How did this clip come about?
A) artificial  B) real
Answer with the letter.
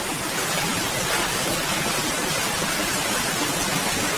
B